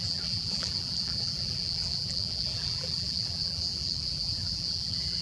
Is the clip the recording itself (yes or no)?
no